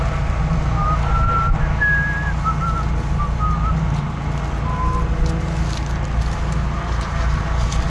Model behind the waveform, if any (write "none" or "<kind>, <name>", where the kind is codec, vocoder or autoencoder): none